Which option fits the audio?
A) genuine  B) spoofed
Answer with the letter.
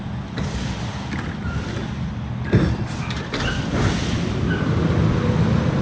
A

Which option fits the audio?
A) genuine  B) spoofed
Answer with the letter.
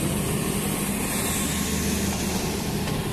A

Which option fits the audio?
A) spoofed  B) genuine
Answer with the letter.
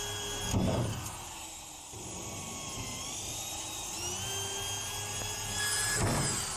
B